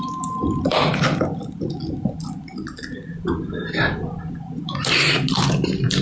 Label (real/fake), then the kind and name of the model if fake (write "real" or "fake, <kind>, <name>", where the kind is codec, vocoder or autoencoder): fake, vocoder, BigVGAN v2